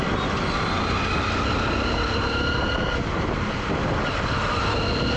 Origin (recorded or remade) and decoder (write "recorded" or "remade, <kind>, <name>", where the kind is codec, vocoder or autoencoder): recorded